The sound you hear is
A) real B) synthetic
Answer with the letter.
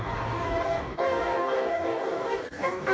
B